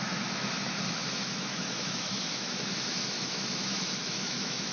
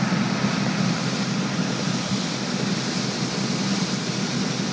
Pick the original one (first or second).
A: second